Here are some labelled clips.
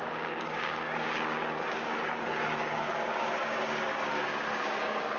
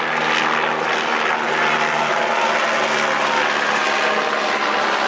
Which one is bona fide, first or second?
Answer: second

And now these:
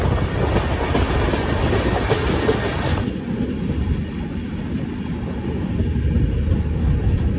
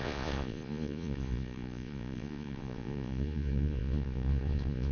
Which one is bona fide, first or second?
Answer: first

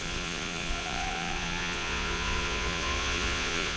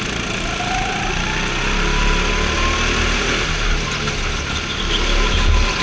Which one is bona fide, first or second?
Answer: second